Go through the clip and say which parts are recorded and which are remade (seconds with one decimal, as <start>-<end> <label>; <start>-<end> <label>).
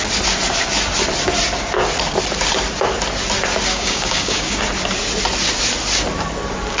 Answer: 0.0-3.7 recorded; 3.7-4.6 remade; 4.6-6.8 recorded